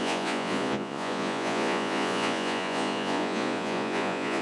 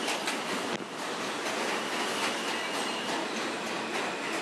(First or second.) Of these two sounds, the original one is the second